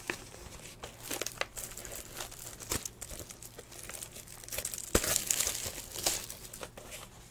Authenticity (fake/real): real